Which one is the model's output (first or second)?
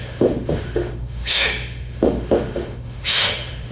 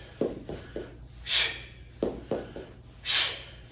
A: first